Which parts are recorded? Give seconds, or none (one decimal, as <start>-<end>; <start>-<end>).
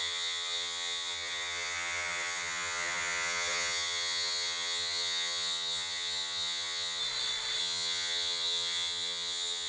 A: 7.0-7.6